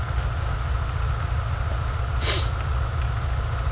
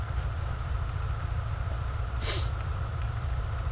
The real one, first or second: first